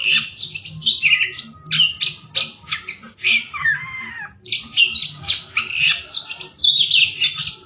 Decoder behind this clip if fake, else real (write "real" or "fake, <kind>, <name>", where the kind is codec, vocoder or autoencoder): real